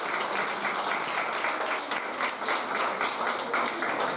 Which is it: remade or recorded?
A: recorded